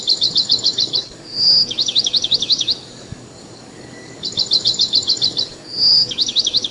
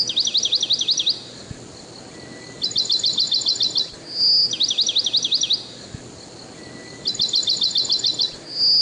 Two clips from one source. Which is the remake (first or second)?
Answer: first